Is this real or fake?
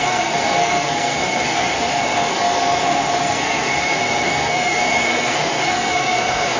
fake